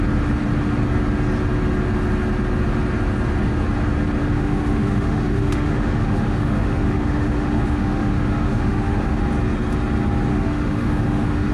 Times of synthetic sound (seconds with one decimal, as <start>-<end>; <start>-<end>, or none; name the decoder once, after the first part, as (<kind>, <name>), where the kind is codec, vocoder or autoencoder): 4.2-9.2 (autoencoder, DAC-VAE); 10.3-11.5